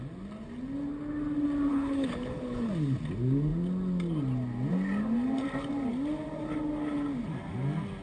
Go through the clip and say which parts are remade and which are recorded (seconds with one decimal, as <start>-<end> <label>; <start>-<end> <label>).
0.0-1.7 recorded; 1.7-2.7 remade; 2.7-8.0 recorded